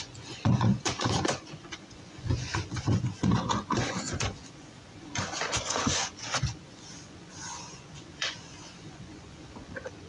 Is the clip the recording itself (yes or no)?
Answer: no